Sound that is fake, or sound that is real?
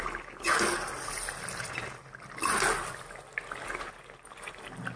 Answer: real